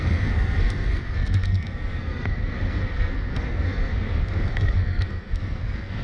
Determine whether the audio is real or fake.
fake